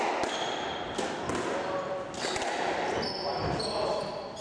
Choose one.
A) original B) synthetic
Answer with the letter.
A